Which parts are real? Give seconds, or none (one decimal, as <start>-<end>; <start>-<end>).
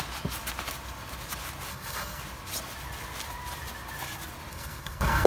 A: 0.0-1.7; 2.2-4.5